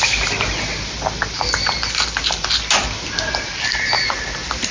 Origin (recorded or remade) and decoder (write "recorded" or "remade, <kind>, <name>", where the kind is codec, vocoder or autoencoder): recorded